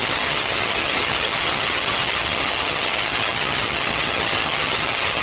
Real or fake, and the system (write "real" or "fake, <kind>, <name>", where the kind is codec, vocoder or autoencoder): fake, vocoder, HiFi-GAN